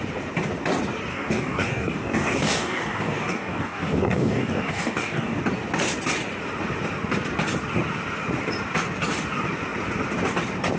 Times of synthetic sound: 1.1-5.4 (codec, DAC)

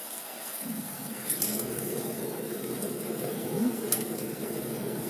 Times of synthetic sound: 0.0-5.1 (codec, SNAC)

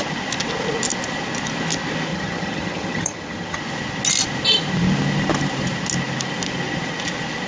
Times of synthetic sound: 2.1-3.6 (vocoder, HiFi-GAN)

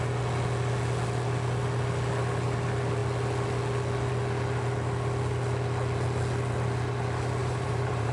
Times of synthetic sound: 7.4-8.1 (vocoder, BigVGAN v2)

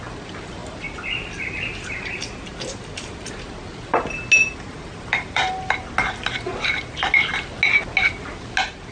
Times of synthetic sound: 4.4-5.5 (vocoder, BigVGAN v2)

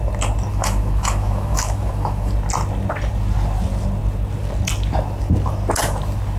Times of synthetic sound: 0.5-2.3 (autoencoder, DAC-VAE)